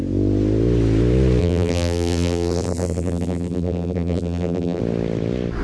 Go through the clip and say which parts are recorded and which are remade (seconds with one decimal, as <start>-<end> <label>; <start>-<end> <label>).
0.0-1.4 recorded; 1.4-4.8 remade; 4.8-5.6 recorded